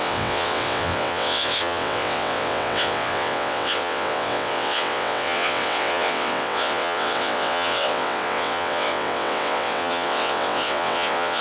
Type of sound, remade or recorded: remade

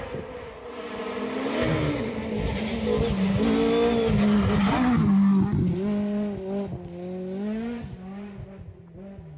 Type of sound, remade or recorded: recorded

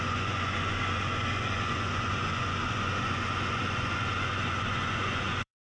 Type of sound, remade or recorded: remade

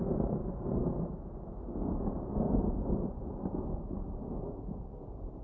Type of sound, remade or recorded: recorded